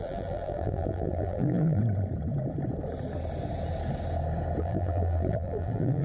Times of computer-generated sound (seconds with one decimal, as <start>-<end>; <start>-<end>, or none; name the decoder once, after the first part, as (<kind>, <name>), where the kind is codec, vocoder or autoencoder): 0.0-1.8 (vocoder, BigVGAN v2); 4.6-6.0